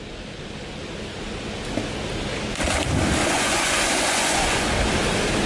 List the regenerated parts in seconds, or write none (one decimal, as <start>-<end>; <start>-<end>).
3.2-4.7